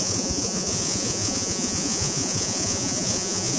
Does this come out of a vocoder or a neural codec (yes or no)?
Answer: yes